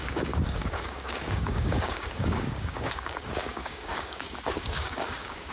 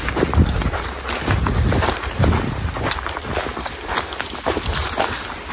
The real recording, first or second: second